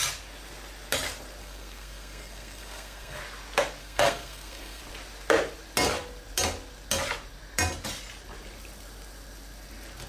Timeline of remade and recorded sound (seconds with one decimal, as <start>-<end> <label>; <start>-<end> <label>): 0.0-1.4 recorded; 1.4-3.2 remade; 3.2-3.8 recorded; 3.8-4.8 remade; 4.8-10.1 recorded